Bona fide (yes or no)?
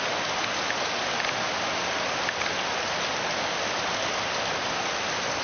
yes